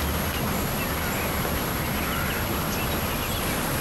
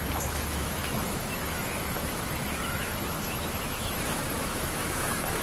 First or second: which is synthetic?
second